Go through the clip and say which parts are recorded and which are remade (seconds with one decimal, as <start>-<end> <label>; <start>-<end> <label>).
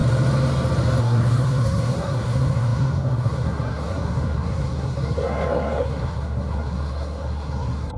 0.0-1.0 recorded; 1.0-8.0 remade